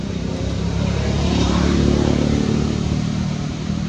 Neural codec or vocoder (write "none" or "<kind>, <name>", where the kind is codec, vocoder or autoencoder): vocoder, BigVGAN v2